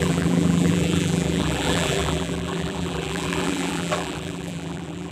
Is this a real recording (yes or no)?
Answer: no